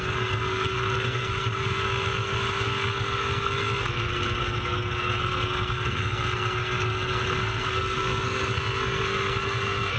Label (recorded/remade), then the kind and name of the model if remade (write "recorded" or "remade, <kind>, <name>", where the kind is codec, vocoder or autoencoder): remade, codec, SNAC